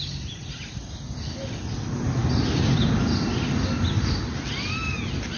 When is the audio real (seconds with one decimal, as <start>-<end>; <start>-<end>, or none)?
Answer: 0.0-5.4